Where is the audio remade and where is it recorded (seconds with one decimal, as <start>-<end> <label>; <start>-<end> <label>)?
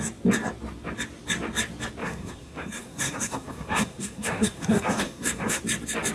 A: 0.0-2.0 recorded; 2.0-5.6 remade; 5.6-6.1 recorded